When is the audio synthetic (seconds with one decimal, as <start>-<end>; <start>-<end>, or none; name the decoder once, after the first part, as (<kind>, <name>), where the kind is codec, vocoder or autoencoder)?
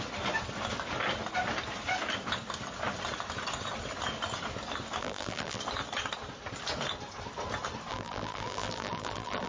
5.0-5.6 (vocoder, BigVGAN v2); 7.9-9.5